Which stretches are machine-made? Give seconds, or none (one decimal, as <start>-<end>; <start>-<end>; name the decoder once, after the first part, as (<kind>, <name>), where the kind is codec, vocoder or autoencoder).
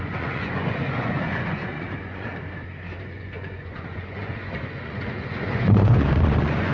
0.0-2.3 (vocoder, Vocos); 3.0-6.7